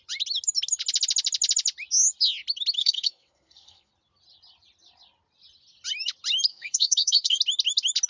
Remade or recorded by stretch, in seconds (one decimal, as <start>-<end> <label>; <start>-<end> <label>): 0.0-2.8 recorded; 2.8-3.9 remade; 3.9-6.5 recorded; 6.5-7.4 remade; 7.4-8.1 recorded